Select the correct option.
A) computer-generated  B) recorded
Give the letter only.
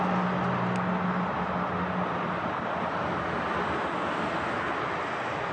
B